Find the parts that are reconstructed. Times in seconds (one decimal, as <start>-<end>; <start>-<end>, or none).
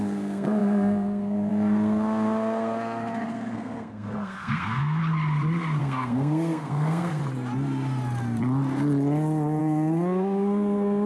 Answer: 0.0-5.0; 5.8-7.2; 9.6-11.1